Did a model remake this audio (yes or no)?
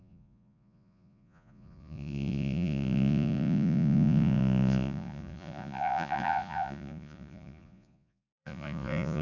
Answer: yes